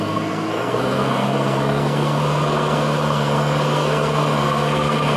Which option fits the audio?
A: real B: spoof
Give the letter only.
B